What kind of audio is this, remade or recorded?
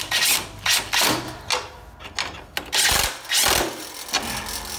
recorded